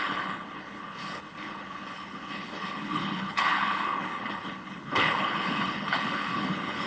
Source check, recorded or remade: remade